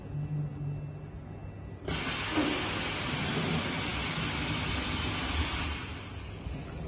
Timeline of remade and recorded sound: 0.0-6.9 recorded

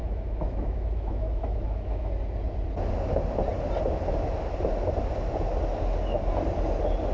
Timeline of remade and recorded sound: 0.0-2.1 remade; 2.1-7.1 recorded

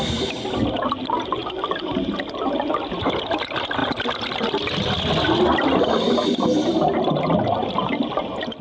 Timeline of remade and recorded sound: 0.0-8.6 recorded

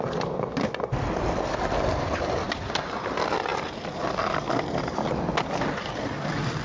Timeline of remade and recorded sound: 0.0-6.6 recorded

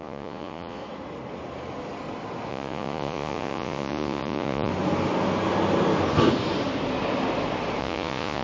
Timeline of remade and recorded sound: 0.0-0.8 remade; 0.8-2.5 recorded; 2.5-4.7 remade; 4.7-7.8 recorded; 7.8-8.4 remade